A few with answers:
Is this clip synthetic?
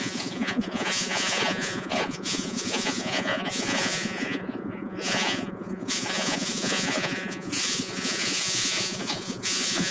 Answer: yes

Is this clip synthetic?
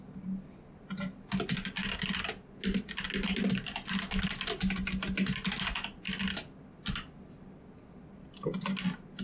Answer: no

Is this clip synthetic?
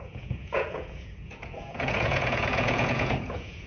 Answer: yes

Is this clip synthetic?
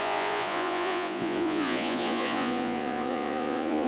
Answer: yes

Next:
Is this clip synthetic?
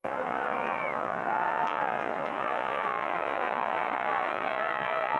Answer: yes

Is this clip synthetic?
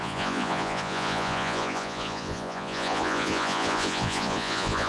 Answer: yes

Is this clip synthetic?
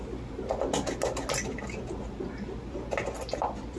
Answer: no